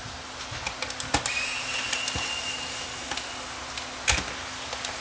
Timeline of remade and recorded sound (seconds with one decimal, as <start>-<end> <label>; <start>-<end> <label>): 0.0-5.0 recorded